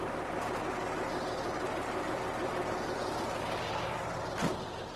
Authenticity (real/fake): fake